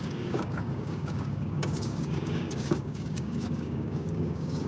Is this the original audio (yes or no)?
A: no